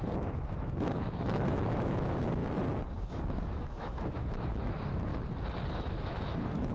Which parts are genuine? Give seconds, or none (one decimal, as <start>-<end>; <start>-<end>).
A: 2.4-2.9; 5.1-5.7